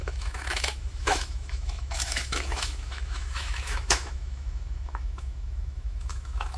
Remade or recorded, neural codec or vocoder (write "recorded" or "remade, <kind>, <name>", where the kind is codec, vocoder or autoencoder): remade, autoencoder, DAC-VAE